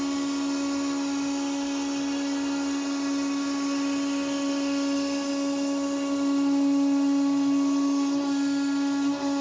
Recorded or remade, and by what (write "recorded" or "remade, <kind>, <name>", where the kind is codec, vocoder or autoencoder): recorded